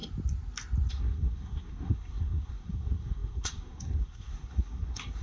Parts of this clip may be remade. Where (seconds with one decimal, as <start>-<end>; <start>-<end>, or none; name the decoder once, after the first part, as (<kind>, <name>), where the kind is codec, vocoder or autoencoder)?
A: 0.9-5.2 (codec, SNAC)

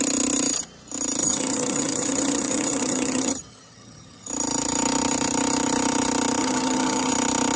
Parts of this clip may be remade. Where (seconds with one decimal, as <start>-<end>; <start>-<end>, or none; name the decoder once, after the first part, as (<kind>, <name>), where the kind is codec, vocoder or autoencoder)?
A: 1.2-4.3 (vocoder, HiFi-GAN); 6.4-7.1

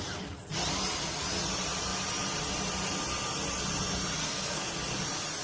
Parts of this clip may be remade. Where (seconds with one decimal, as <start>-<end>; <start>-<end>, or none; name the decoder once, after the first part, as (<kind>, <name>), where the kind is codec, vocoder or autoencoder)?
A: 4.2-4.7 (codec, SNAC)